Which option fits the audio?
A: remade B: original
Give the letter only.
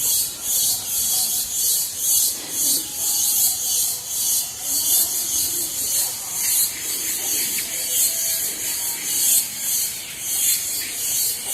A